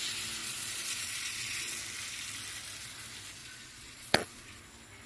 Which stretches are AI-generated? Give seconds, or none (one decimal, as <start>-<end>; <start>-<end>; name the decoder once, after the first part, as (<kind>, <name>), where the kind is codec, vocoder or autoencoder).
0.4-1.7 (vocoder, Vocos); 3.4-4.6